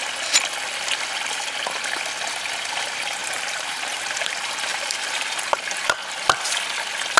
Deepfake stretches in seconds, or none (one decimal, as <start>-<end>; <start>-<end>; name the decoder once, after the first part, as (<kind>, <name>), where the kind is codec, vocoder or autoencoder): 3.2-4.3 (vocoder, BigVGAN v2); 4.7-6.0